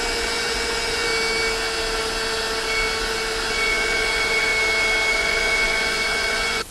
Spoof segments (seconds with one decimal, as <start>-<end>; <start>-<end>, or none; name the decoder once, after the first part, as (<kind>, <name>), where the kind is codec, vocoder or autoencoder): 0.0-1.1 (vocoder, Vocos); 3.5-4.5; 5.1-6.7